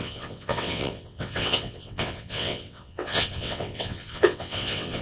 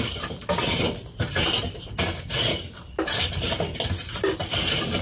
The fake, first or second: first